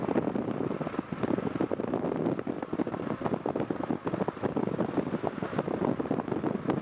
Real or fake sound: real